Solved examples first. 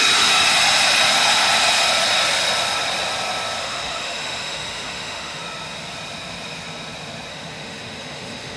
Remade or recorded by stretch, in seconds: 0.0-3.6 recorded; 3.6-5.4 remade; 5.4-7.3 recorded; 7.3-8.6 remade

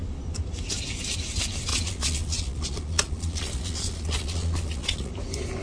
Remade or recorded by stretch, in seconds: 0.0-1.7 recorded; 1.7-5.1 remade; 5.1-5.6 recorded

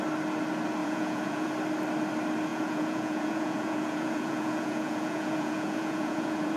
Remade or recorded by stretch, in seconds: 0.0-0.8 recorded; 0.8-1.5 remade; 1.5-2.5 recorded; 2.5-6.6 remade